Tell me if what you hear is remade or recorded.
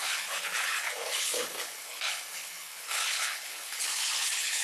remade